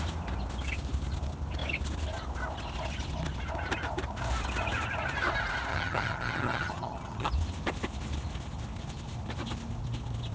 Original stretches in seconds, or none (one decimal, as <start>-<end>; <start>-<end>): 0.0-5.7; 7.3-10.3